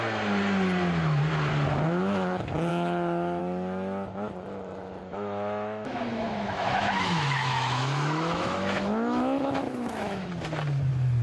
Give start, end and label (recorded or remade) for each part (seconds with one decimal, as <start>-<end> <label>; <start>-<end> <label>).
0.0-2.7 recorded; 2.7-3.4 remade; 3.4-5.1 recorded; 5.1-10.3 remade; 10.3-11.2 recorded